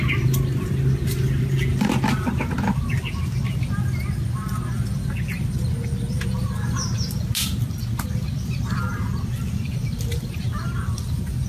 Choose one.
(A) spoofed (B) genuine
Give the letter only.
B